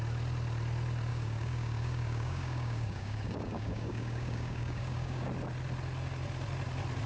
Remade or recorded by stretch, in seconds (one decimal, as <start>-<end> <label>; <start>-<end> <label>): 0.0-1.1 recorded; 1.1-5.3 remade; 5.3-7.1 recorded